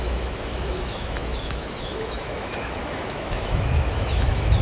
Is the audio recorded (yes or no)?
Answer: no